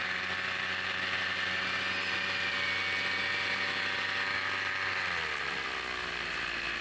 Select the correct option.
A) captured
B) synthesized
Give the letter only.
A